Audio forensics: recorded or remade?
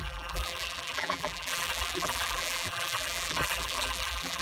remade